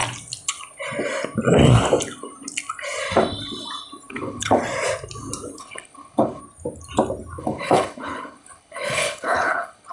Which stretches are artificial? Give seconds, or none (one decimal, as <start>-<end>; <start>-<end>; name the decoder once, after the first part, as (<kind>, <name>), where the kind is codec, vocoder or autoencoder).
4.1-4.6 (codec, HILCodec); 5.6-6.4; 7.4-9.9